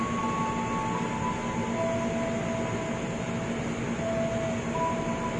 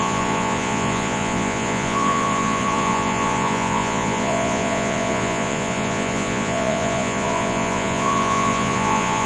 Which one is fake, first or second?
second